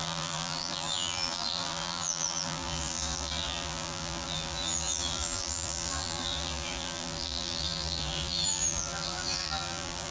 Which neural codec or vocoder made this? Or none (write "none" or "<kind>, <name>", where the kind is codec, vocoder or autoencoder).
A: vocoder, BigVGAN v2